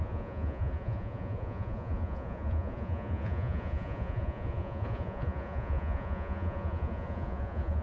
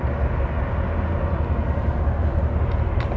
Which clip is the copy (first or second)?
first